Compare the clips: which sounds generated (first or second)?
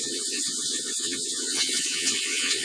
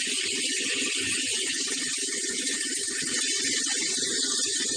first